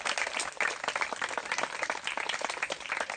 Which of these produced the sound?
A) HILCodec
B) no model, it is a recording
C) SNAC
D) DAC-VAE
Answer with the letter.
B